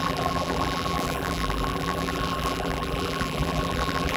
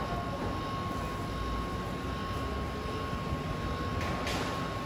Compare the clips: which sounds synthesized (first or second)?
first